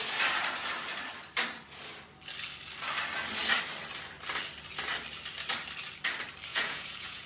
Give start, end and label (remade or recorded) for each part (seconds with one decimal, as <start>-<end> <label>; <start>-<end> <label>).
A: 0.0-6.5 recorded; 6.5-7.3 remade